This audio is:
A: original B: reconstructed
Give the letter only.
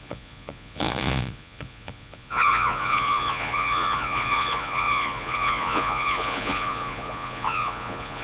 B